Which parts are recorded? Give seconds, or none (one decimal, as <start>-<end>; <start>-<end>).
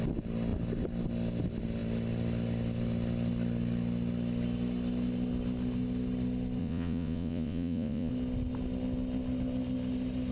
0.0-6.6; 8.1-10.3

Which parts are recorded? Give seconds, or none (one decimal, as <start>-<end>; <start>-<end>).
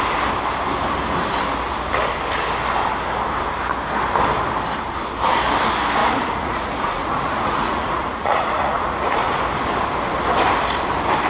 0.0-6.0; 9.4-11.3